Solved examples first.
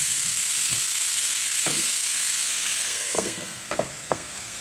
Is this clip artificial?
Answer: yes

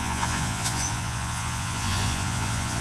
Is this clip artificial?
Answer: yes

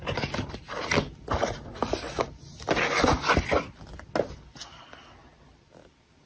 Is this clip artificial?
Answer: no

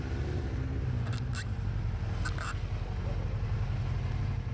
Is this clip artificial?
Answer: no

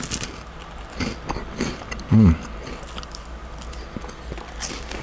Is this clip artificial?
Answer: no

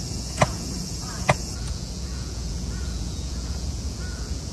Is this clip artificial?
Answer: yes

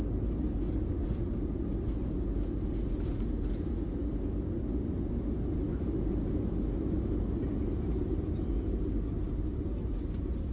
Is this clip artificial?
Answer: no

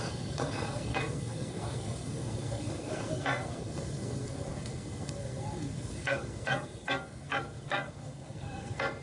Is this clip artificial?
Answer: yes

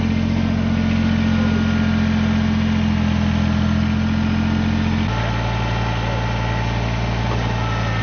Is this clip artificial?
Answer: no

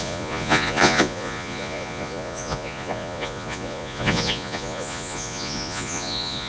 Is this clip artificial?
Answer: yes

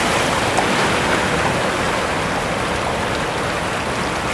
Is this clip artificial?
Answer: no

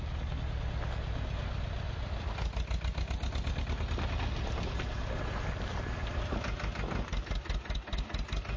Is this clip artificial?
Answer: no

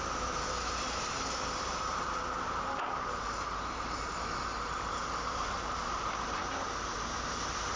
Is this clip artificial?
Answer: yes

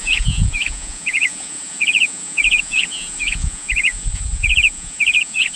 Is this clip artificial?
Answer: yes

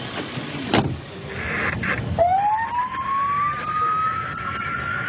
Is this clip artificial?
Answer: no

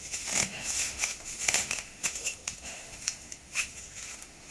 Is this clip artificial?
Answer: yes